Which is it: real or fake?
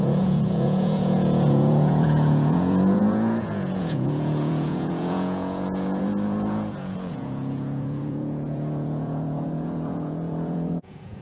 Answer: fake